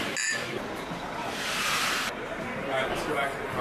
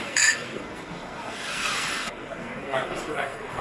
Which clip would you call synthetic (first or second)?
second